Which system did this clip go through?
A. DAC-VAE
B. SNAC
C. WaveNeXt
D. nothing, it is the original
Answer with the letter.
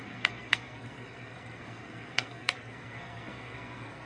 B